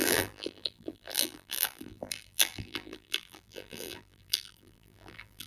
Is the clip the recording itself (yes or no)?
no